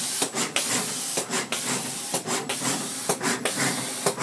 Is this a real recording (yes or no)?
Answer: no